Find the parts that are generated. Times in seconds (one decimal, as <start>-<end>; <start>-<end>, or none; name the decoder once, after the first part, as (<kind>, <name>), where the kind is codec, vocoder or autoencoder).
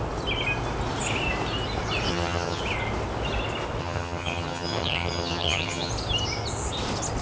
2.1-2.6 (vocoder, HiFi-GAN); 3.8-5.9